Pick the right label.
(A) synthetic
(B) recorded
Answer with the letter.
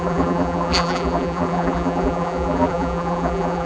A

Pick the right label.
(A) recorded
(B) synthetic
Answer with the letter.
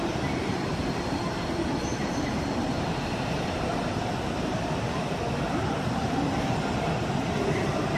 B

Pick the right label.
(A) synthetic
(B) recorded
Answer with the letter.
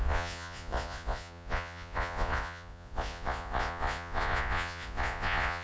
A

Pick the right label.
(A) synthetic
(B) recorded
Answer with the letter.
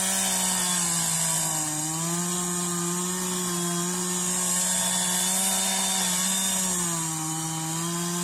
B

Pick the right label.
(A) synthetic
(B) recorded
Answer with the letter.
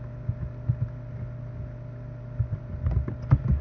B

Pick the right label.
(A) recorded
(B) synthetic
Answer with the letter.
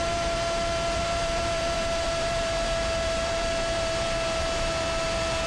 B